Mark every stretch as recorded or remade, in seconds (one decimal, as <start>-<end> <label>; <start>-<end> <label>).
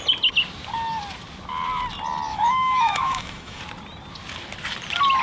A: 0.0-2.3 recorded; 2.3-3.6 remade; 3.6-5.2 recorded